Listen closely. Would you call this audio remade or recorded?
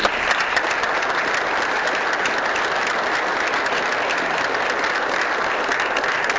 recorded